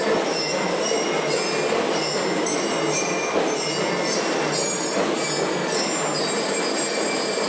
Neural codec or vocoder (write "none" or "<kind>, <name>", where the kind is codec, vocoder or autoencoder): none